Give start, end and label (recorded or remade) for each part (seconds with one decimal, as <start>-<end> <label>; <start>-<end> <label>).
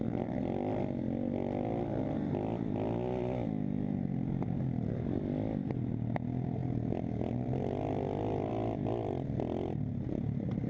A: 0.0-10.7 recorded